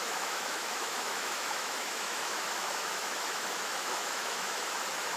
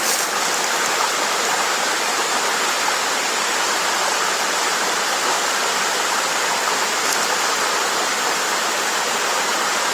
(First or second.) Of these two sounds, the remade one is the first